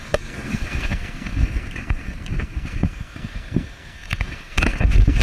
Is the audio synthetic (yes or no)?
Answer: yes